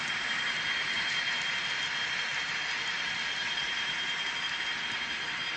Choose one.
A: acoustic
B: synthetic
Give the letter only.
A